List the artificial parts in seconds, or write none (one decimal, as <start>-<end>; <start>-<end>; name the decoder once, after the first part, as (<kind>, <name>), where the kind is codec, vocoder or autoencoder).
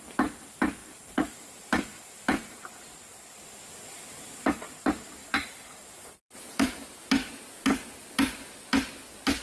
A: 0.8-2.6 (vocoder, BigVGAN v2); 5.2-7.0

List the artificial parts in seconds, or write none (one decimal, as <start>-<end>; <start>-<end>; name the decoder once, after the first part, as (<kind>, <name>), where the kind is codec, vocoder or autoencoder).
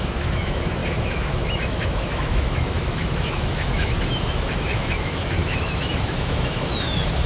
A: 0.0-7.3 (autoencoder, DAC-VAE)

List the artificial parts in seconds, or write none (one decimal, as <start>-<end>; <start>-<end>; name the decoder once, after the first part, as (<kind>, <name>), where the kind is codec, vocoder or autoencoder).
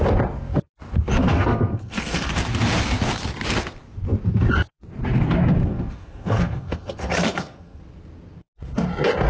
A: 1.2-2.3 (codec, SNAC); 5.6-7.8